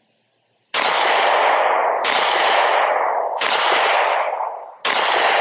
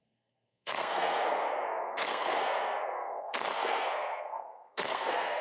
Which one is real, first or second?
first